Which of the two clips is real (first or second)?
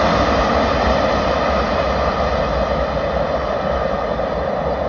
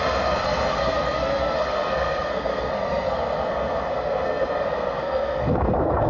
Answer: first